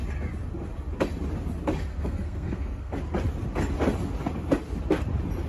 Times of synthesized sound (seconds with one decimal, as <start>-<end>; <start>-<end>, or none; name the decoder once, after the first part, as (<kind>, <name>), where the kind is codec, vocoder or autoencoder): 1.9-2.9 (codec, SNAC)